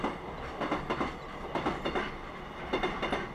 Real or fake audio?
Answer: real